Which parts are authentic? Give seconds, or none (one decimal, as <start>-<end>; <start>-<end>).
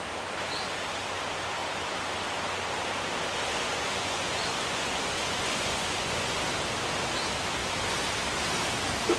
0.0-3.5; 6.4-9.2